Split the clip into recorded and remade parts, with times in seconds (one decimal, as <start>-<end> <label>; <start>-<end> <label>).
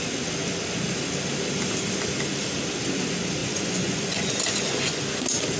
0.0-3.4 recorded; 3.4-5.0 remade; 5.0-5.6 recorded